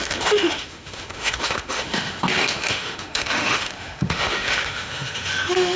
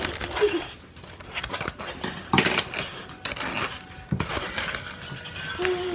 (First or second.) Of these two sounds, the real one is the second